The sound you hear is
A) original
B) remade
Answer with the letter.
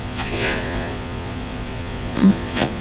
B